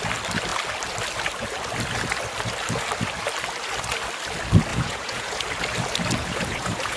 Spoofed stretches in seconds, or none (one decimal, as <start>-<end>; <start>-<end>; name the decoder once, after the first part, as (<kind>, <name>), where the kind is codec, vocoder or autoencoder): 4.7-5.4 (vocoder, Vocos); 6.2-7.0